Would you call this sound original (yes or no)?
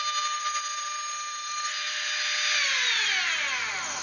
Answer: yes